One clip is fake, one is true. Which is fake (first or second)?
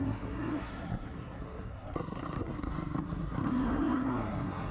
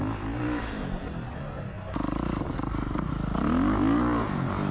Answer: first